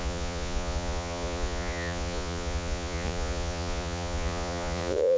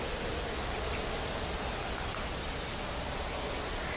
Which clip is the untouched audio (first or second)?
second